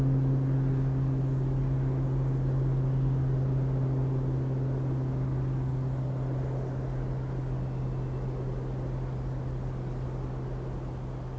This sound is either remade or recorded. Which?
recorded